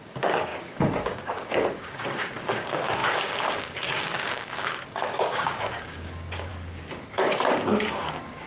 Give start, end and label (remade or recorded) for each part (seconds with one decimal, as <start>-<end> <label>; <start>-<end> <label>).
0.0-6.5 remade; 6.5-7.0 recorded; 7.0-8.5 remade